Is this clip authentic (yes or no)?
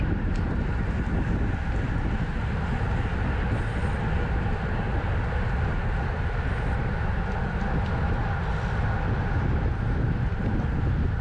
yes